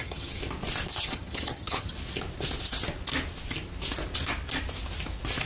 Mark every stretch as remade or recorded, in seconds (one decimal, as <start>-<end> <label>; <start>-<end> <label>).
0.0-0.4 remade; 0.4-1.0 recorded; 1.0-1.9 remade; 1.9-5.4 recorded